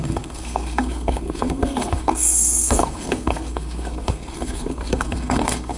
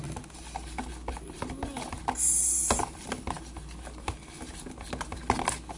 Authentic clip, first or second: second